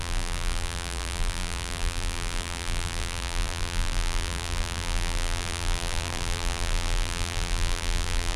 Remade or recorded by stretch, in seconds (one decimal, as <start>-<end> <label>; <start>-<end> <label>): 0.0-8.4 remade